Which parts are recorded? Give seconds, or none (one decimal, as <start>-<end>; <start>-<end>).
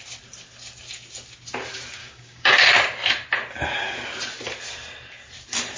0.0-2.0; 2.5-5.8